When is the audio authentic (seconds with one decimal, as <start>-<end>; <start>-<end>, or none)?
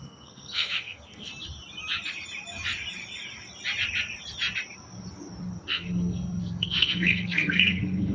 1.3-5.7